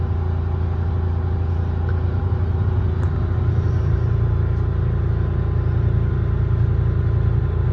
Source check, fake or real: real